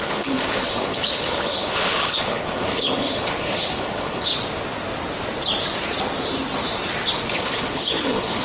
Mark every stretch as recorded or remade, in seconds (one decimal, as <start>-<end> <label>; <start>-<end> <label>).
0.0-4.3 remade; 4.3-7.3 recorded; 7.3-8.4 remade